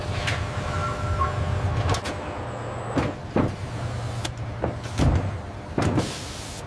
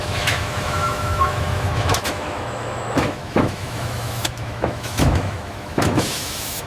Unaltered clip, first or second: first